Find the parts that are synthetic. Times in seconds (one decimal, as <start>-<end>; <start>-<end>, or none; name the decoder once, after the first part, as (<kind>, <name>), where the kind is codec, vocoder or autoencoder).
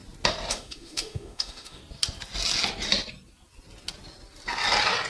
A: 0.5-1.8 (autoencoder, DAC-VAE)